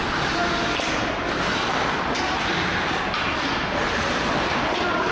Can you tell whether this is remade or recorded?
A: remade